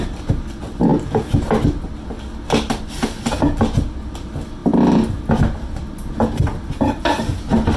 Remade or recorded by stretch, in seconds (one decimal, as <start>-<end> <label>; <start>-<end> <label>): 0.0-7.8 recorded